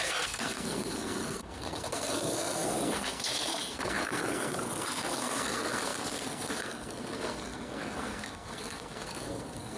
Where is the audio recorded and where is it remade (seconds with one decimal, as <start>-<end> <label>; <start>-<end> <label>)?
0.0-9.8 remade